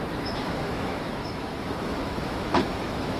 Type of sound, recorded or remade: remade